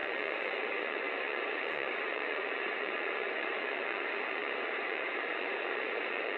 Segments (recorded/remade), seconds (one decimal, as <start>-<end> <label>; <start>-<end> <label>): 0.0-6.4 remade